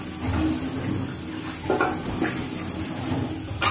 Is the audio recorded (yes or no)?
yes